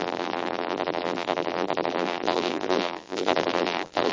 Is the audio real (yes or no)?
no